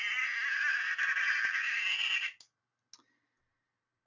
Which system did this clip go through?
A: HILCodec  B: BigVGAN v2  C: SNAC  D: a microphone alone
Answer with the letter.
D